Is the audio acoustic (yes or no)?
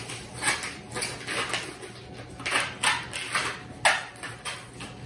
yes